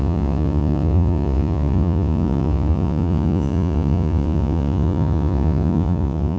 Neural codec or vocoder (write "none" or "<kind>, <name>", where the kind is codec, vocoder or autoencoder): vocoder, Vocos